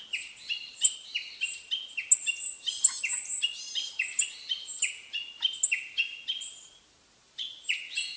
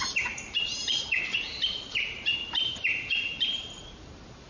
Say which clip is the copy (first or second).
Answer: second